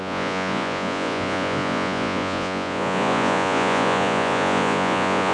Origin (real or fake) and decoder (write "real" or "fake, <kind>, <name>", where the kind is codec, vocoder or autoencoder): fake, vocoder, Vocos